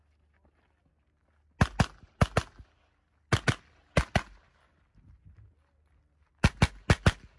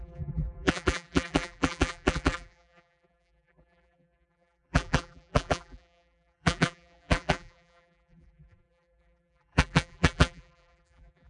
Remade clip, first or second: second